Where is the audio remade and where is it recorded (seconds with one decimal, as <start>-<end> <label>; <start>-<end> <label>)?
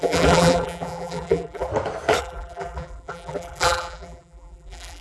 0.0-1.7 remade; 1.7-2.2 recorded; 2.2-5.0 remade